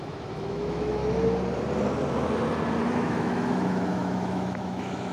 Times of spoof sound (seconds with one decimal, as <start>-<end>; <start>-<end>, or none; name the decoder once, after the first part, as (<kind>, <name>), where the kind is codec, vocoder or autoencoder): 0.0-1.0 (autoencoder, DAC-VAE); 2.9-5.1